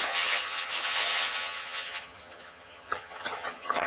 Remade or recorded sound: remade